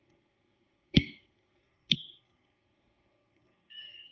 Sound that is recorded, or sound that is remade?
remade